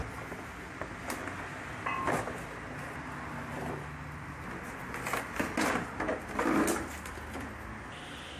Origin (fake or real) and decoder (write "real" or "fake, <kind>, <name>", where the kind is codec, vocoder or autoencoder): real